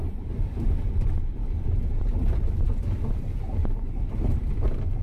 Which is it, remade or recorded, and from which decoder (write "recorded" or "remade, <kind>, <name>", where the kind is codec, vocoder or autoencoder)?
remade, vocoder, BigVGAN v2